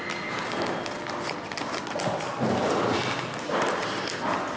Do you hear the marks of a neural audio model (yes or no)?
no